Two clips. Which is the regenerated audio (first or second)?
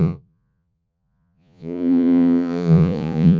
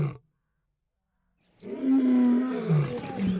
first